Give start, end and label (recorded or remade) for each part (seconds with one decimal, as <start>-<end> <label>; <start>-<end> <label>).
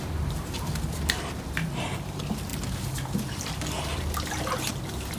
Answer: 0.0-5.2 recorded